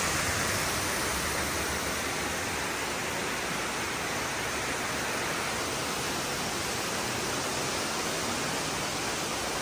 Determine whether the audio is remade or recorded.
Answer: recorded